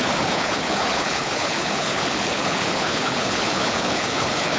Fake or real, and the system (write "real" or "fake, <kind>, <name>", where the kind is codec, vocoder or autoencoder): fake, codec, HILCodec